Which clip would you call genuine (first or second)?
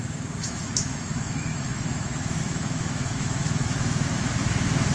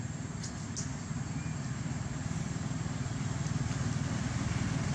second